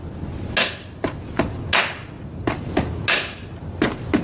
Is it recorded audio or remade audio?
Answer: recorded